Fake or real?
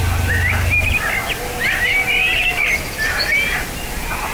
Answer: real